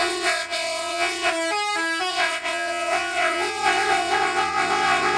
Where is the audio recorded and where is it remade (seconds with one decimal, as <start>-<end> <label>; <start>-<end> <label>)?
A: 0.0-1.3 remade; 1.3-2.1 recorded; 2.1-5.2 remade